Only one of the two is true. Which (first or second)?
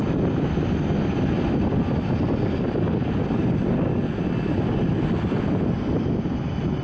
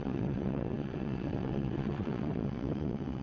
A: first